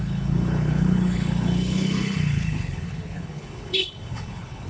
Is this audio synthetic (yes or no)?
yes